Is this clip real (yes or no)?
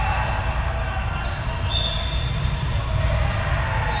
yes